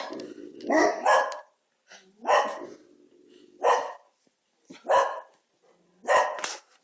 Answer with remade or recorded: recorded